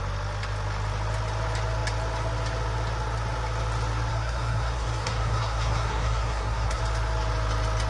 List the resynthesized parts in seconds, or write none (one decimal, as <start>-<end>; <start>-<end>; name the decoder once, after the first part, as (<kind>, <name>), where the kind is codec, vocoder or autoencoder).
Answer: 4.1-6.8 (codec, SNAC)